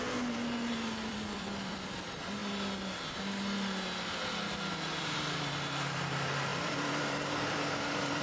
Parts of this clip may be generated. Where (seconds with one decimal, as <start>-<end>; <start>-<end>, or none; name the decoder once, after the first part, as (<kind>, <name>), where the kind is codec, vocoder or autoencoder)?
0.0-2.4 (vocoder, BigVGAN v2); 5.0-8.2